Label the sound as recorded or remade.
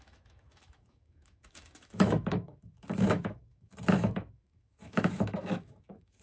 remade